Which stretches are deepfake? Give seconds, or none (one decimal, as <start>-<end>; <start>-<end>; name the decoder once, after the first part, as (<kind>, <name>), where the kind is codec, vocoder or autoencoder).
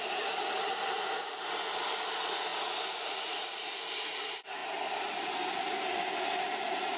6.3-7.0 (vocoder, BigVGAN v2)